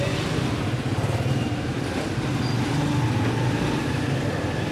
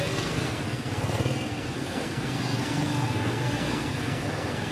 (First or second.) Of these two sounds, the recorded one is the first